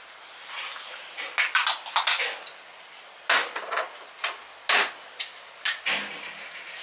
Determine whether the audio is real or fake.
real